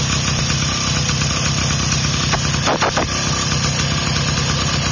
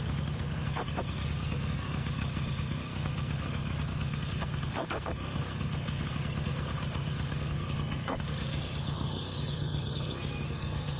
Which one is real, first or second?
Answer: first